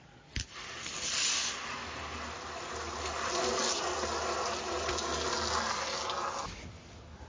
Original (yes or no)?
yes